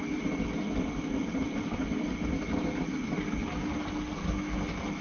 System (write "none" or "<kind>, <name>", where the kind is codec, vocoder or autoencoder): none